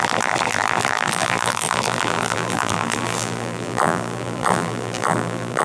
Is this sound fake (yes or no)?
yes